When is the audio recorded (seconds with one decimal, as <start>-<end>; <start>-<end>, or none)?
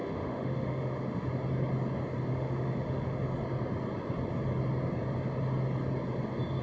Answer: 1.3-2.3; 3.2-6.6